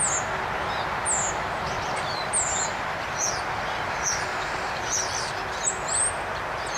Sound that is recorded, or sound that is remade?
recorded